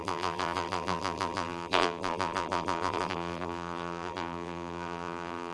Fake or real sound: fake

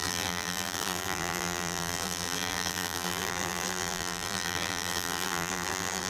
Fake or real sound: fake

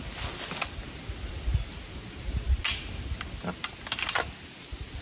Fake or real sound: real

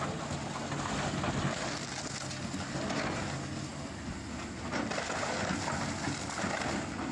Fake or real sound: real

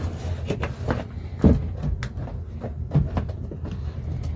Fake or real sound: real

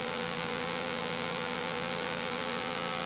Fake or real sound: fake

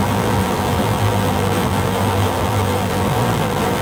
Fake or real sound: fake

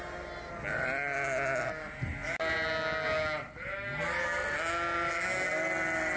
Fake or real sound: real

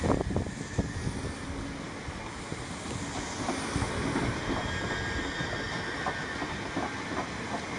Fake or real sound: real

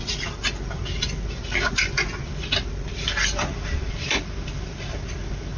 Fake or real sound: real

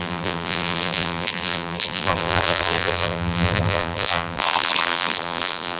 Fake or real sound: fake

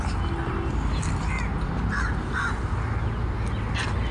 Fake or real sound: real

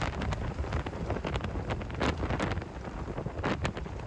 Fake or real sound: real